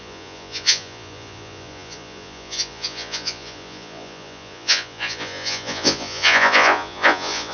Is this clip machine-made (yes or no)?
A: yes